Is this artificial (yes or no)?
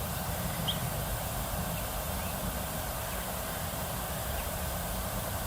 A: yes